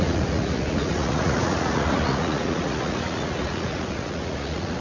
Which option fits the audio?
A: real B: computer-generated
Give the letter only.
B